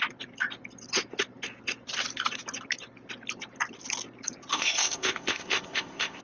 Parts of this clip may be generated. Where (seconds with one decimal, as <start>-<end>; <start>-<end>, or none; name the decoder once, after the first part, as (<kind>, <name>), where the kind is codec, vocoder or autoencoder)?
4.5-6.2 (codec, ZipCodec)